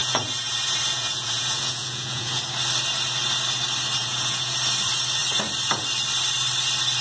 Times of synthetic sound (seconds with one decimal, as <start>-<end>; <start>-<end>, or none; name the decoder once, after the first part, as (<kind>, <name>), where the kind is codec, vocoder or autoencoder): 0.0-2.4 (vocoder, Vocos); 4.0-4.5